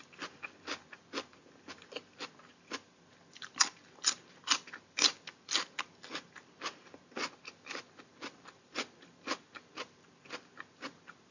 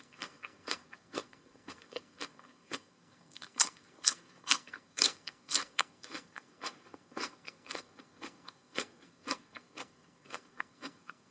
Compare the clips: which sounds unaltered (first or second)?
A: first